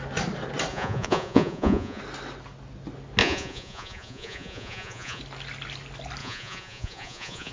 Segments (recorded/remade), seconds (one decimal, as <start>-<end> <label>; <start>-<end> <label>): 0.0-0.7 recorded; 0.7-2.0 remade; 2.0-3.2 recorded; 3.2-5.2 remade; 5.2-6.2 recorded; 6.2-7.5 remade